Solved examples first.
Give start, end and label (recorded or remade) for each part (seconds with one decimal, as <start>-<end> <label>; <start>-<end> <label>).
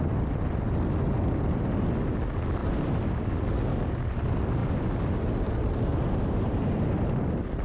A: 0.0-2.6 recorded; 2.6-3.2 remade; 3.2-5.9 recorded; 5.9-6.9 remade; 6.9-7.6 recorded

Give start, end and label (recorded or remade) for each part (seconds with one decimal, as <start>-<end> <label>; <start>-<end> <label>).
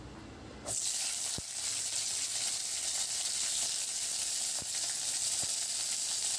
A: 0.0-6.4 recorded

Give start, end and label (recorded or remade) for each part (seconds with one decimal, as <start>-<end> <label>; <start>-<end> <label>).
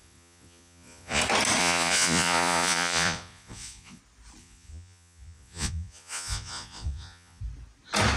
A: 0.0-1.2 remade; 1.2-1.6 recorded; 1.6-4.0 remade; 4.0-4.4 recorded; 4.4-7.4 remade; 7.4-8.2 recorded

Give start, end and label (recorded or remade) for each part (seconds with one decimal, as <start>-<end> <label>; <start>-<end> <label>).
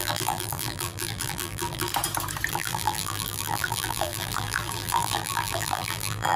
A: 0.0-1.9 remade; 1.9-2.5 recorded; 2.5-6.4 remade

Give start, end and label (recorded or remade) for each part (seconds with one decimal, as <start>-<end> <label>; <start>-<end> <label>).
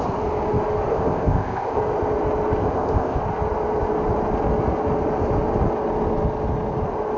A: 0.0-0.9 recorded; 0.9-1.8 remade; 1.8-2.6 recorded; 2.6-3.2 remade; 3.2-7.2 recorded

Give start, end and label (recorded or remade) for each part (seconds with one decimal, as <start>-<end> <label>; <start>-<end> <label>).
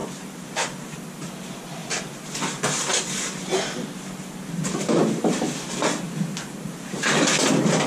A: 0.0-1.3 remade; 1.3-1.8 recorded; 1.8-2.4 remade; 2.4-7.9 recorded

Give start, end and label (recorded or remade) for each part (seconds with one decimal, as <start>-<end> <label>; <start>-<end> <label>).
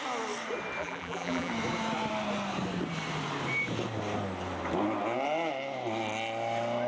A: 0.0-0.8 recorded; 0.8-1.5 remade; 1.5-6.9 recorded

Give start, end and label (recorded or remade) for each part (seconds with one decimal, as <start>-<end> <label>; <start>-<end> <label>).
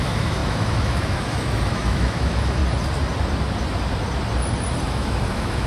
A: 0.0-2.6 remade; 2.6-4.9 recorded; 4.9-5.7 remade